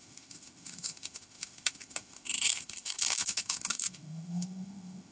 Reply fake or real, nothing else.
fake